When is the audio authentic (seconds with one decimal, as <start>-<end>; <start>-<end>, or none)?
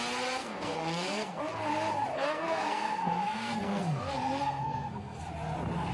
0.0-0.4; 1.4-2.1; 4.0-4.4; 5.2-5.9